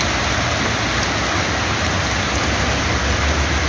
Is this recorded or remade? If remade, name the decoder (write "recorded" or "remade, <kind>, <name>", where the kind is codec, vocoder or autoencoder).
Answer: recorded